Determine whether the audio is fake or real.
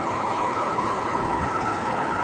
fake